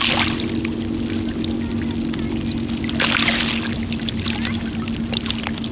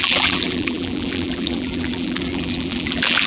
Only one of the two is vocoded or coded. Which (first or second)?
second